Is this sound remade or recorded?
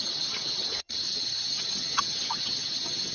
remade